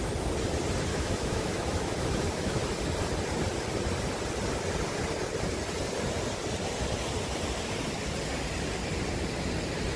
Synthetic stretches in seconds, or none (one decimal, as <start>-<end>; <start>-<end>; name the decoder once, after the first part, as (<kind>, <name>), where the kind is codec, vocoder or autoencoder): 0.9-2.6 (autoencoder, DAC-VAE)